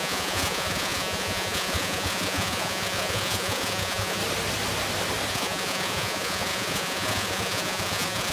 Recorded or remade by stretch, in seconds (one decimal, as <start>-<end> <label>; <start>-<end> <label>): 0.0-4.2 remade; 4.2-5.3 recorded; 5.3-8.3 remade

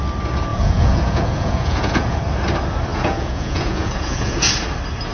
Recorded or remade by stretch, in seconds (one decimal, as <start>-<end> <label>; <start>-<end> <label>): 0.0-0.5 recorded; 0.5-2.2 remade; 2.2-2.9 recorded; 2.9-4.4 remade; 4.4-5.1 recorded

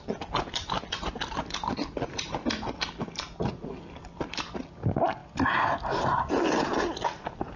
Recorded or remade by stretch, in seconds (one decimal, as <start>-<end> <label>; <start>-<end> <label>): 0.0-7.6 recorded

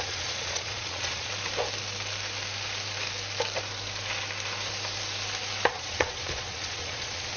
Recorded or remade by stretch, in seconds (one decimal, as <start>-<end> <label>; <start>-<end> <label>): 0.0-1.3 remade; 1.3-5.7 recorded; 5.7-7.4 remade